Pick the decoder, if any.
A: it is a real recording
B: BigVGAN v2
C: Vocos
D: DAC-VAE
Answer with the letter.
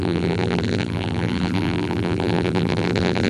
B